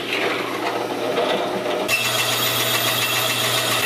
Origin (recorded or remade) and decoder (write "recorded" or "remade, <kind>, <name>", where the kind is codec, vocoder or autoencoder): recorded